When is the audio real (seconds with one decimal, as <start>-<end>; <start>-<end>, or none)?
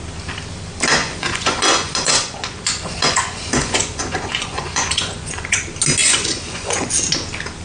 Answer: 0.0-1.0; 5.6-6.0; 6.9-7.6